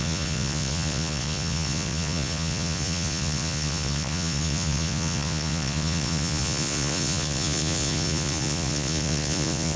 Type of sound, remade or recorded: remade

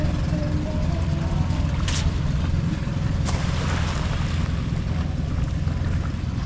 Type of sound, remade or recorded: recorded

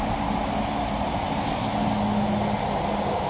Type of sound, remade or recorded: recorded